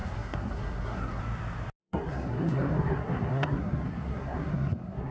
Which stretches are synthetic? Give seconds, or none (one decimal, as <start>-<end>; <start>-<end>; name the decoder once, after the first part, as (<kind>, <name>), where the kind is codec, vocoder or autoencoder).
0.0-1.2 (codec, SNAC); 1.8-5.1